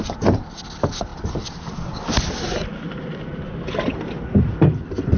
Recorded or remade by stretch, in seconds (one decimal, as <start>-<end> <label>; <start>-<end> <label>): 0.0-5.2 recorded